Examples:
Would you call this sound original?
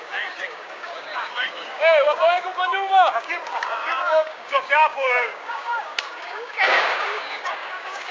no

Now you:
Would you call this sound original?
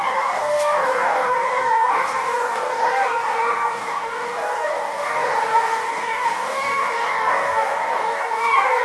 no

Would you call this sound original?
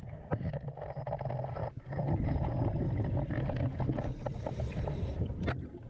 yes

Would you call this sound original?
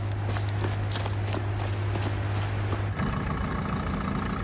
yes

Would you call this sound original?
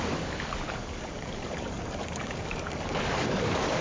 no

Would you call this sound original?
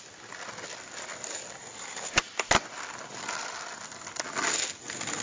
yes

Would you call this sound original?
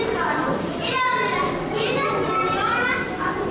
yes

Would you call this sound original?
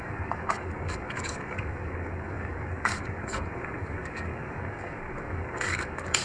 no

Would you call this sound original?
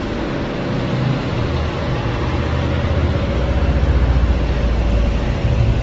yes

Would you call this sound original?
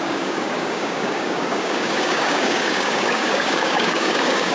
no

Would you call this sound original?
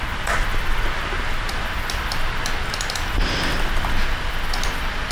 yes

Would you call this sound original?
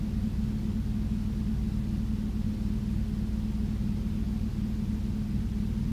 yes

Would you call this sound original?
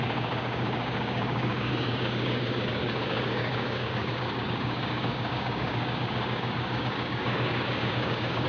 no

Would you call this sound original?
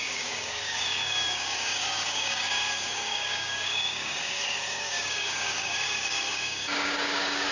no